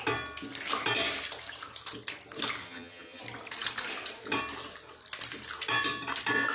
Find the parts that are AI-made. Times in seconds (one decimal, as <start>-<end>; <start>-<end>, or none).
2.6-3.2